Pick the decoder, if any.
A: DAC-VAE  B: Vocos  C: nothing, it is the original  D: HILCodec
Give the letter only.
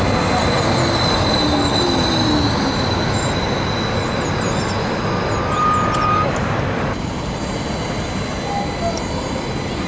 C